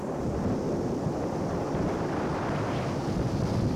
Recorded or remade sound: recorded